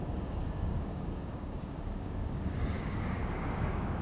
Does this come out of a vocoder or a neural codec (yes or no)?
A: yes